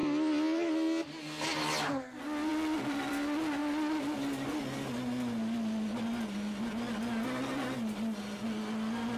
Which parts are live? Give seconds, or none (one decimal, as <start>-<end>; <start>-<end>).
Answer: 1.9-3.6; 6.0-9.2